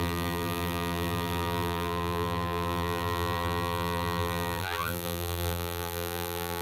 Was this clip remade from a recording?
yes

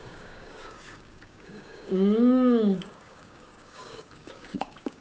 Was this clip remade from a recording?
yes